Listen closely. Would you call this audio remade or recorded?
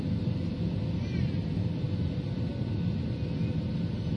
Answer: recorded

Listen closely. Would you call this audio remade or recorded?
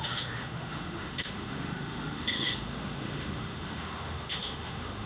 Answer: remade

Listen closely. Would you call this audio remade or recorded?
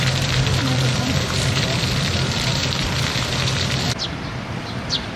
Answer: remade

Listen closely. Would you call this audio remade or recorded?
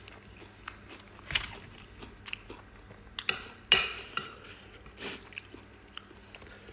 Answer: recorded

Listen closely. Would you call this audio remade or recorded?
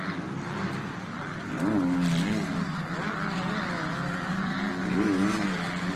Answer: recorded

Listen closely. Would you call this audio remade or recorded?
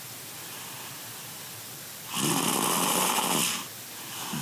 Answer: recorded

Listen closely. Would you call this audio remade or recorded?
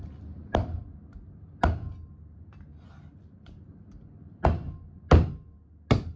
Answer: recorded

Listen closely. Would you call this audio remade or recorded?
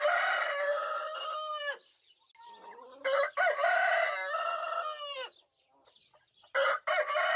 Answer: recorded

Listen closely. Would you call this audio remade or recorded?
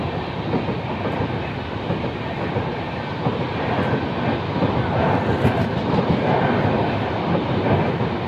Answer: recorded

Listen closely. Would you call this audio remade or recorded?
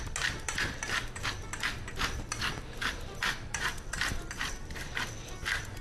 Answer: recorded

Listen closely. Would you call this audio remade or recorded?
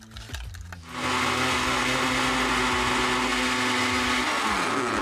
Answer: recorded